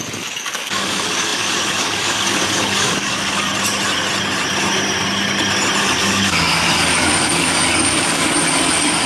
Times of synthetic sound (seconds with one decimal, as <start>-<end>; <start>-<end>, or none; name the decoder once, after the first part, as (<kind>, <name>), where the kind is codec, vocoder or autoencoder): 0.0-3.5 (codec, DAC); 5.8-9.1